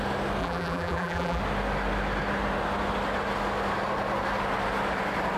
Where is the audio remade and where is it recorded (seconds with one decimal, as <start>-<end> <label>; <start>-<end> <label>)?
0.0-0.4 recorded; 0.4-1.4 remade; 1.4-5.4 recorded